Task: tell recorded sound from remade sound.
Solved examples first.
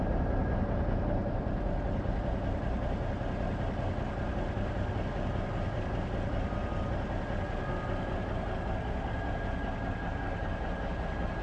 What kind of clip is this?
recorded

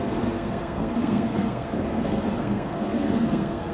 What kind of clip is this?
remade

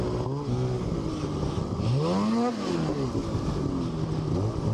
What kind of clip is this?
recorded